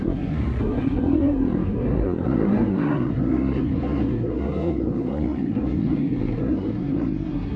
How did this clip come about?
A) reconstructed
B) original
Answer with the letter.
A